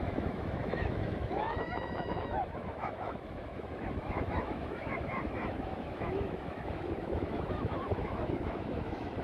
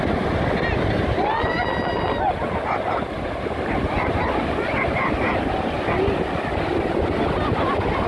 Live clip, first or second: second